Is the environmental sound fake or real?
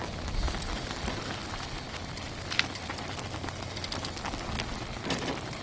real